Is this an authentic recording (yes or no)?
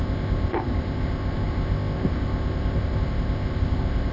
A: no